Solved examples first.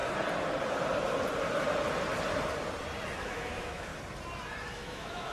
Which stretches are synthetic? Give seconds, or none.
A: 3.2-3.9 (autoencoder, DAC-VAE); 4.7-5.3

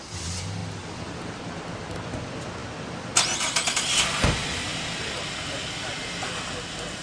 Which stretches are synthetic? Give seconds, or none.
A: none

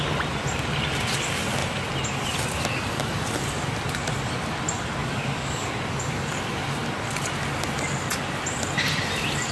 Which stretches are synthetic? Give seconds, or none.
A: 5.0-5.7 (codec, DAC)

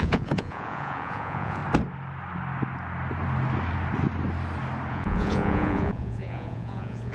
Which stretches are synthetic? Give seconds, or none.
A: 0.0-1.6 (vocoder, Vocos); 4.9-7.1

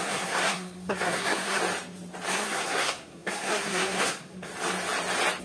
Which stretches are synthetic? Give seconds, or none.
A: 0.0-1.6 (codec, SNAC); 2.3-4.5

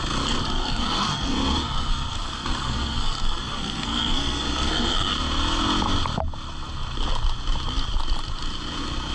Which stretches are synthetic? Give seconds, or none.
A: 0.6-5.1 (codec, SNAC)